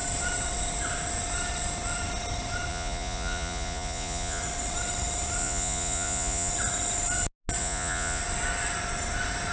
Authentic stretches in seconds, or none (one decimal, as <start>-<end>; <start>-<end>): 0.0-2.7; 4.4-5.4; 6.5-7.6; 8.2-9.5